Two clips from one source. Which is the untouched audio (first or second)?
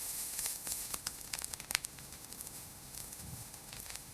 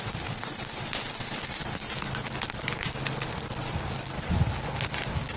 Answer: second